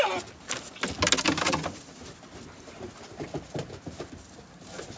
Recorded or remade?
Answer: recorded